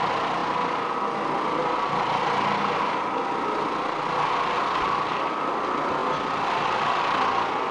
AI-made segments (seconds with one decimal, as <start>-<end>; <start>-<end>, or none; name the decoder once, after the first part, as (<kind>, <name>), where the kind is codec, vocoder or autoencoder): none